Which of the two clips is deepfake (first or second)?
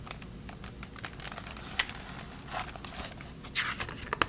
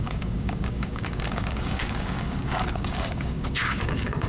second